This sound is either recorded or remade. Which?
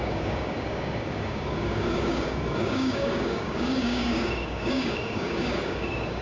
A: remade